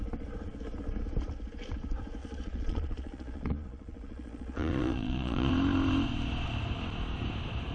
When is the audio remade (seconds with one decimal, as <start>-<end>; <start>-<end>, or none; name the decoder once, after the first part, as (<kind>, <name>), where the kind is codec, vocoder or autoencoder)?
2.2-5.5 (vocoder, Vocos)